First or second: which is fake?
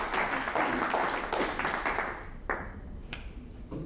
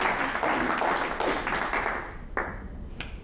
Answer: first